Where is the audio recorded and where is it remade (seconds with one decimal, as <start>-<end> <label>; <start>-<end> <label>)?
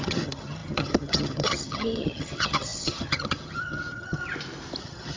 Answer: 0.0-4.2 remade; 4.2-4.8 recorded; 4.8-5.2 remade